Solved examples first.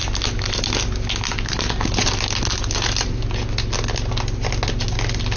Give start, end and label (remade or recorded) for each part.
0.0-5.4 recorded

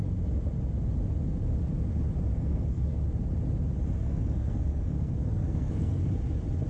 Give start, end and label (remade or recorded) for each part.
0.0-2.3 recorded; 2.3-3.0 remade; 3.0-4.0 recorded; 4.0-6.1 remade; 6.1-6.7 recorded

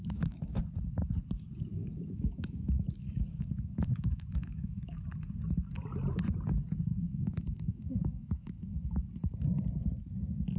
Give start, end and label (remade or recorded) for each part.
0.0-0.6 remade; 0.6-1.7 recorded; 1.7-5.0 remade; 5.0-6.9 recorded; 6.9-8.9 remade; 8.9-10.6 recorded

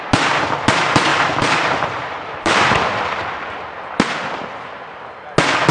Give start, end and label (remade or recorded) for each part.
0.0-1.1 recorded; 1.1-3.8 remade; 3.8-5.7 recorded